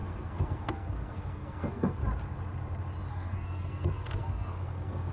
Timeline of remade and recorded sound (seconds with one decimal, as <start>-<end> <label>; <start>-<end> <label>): 0.0-2.0 remade; 2.0-3.1 recorded; 3.1-5.1 remade